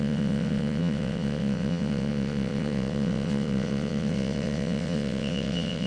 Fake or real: fake